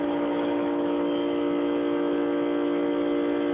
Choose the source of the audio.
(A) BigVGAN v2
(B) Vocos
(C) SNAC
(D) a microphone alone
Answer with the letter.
D